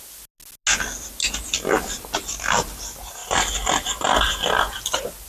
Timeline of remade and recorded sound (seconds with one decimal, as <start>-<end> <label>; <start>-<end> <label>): 0.0-5.3 recorded